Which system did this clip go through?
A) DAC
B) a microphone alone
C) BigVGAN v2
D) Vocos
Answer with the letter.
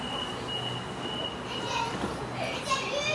B